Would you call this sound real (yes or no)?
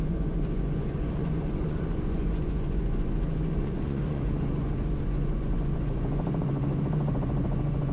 no